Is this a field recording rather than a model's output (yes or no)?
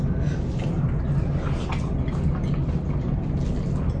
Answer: yes